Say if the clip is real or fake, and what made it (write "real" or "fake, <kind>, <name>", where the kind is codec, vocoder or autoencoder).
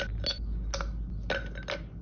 real